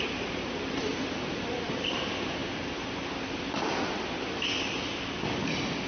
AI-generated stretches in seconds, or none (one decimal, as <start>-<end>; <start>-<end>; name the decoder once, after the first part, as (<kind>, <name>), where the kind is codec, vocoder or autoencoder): 0.9-2.0 (vocoder, BigVGAN v2); 2.4-5.9